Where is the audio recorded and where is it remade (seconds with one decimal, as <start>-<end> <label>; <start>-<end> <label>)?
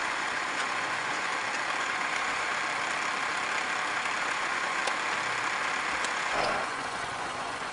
0.0-1.3 remade; 1.3-1.8 recorded; 1.8-2.6 remade; 2.6-4.2 recorded; 4.2-4.8 remade; 4.8-6.0 recorded; 6.0-7.7 remade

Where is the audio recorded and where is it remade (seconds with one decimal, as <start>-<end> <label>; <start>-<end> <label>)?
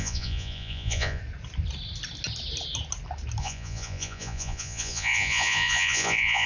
0.0-1.2 remade; 1.2-3.4 recorded; 3.4-6.5 remade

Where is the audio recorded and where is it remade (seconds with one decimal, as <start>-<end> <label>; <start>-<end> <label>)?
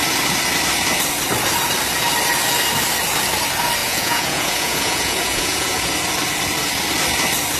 0.0-3.8 recorded; 3.8-5.9 remade; 5.9-7.6 recorded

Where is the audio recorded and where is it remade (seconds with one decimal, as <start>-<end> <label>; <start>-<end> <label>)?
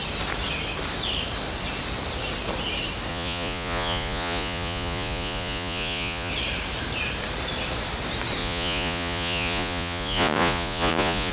0.0-3.1 recorded; 3.1-6.3 remade; 6.3-8.4 recorded; 8.4-11.3 remade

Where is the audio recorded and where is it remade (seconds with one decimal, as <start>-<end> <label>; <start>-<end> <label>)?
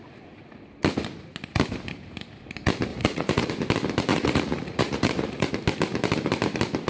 0.0-2.9 recorded; 2.9-3.5 remade; 3.5-4.1 recorded; 4.1-5.5 remade; 5.5-6.9 recorded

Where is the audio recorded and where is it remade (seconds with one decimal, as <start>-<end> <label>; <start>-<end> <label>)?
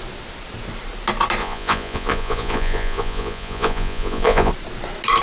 0.0-1.4 recorded; 1.4-4.5 remade; 4.5-5.2 recorded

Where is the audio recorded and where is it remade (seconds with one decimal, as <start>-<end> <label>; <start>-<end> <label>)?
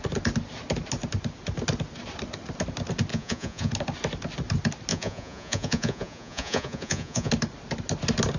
0.0-3.1 recorded; 3.1-3.7 remade; 3.7-4.9 recorded; 4.9-7.3 remade; 7.3-8.4 recorded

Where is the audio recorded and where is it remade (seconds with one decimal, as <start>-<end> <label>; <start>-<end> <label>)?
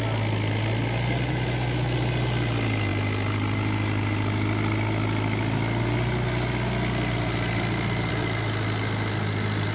0.0-9.7 recorded